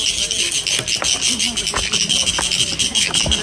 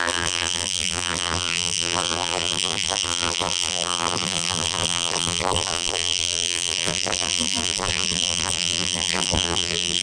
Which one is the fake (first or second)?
second